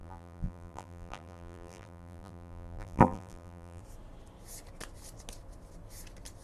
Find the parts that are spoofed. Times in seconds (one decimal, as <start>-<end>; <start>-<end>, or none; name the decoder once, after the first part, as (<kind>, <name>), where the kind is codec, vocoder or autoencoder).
0.0-3.8 (vocoder, BigVGAN v2)